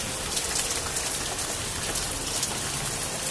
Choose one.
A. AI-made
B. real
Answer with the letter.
B